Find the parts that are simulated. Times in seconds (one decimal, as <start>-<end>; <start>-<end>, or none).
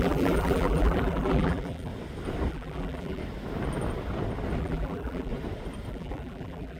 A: 0.0-1.9; 2.5-3.2; 4.6-5.3; 5.9-6.8